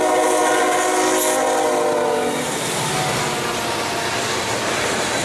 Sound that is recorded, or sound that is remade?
recorded